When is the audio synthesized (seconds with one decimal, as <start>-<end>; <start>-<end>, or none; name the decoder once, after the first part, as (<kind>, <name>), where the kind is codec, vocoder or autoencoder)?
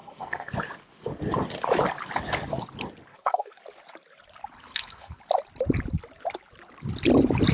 0.0-0.5 (codec, SNAC); 3.1-3.6; 4.7-5.2